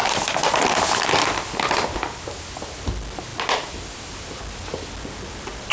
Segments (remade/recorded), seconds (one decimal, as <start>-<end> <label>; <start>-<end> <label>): 0.0-5.7 recorded